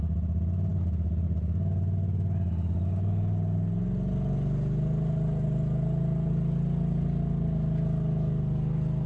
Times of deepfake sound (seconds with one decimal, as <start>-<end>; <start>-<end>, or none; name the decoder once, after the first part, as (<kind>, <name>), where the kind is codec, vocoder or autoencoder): none